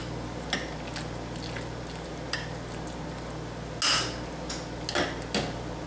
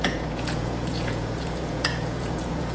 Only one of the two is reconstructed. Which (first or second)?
second